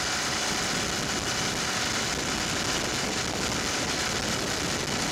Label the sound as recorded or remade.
recorded